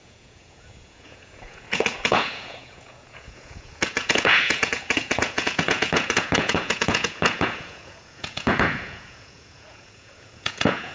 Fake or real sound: fake